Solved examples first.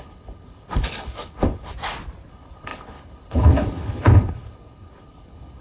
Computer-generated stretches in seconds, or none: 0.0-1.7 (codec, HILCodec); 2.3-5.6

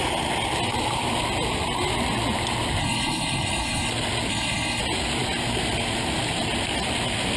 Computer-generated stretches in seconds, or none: 2.8-3.9 (codec, HILCodec); 4.3-4.8

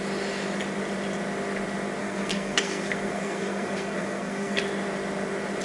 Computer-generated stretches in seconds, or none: 2.0-4.6 (codec, SNAC)

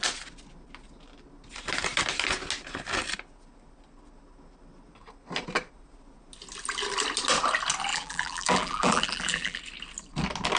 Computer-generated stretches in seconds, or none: 7.9-9.6 (vocoder, BigVGAN v2)